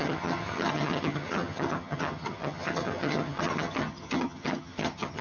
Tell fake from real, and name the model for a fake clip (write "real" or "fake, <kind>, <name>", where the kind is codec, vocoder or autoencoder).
fake, vocoder, HiFi-GAN